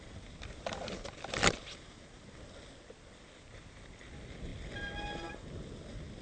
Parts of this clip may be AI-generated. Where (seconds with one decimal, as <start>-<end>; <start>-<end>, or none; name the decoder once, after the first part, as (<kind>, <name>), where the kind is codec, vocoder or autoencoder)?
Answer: none